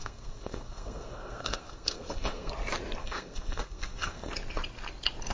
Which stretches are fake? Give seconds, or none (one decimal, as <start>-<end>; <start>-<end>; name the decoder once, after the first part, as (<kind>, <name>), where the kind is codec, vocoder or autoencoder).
0.0-2.5 (codec, SNAC); 3.0-4.3

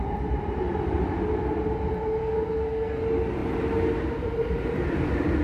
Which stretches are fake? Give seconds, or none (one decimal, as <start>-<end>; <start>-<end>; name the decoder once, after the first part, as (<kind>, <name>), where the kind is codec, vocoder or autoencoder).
2.2-3.0 (codec, SNAC)

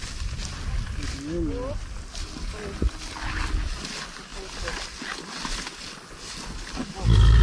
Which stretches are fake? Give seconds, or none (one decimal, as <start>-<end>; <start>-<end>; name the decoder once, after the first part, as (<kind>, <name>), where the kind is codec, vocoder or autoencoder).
none

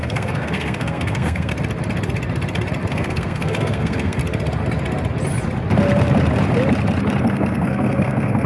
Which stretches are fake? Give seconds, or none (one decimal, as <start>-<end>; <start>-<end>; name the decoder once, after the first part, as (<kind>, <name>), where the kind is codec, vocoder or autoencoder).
0.0-1.5 (codec, SNAC); 2.9-4.2; 7.2-8.5